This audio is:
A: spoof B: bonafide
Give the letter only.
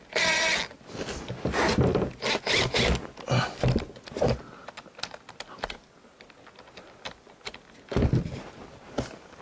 B